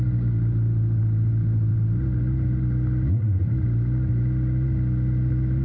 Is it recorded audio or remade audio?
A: recorded